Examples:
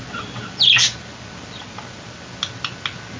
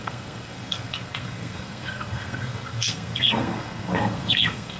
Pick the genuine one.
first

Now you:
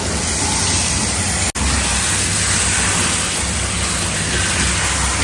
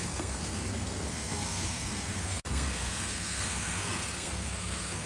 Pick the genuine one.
first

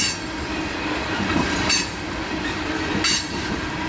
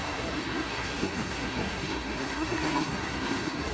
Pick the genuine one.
first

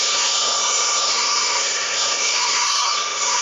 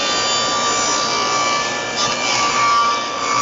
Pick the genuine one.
second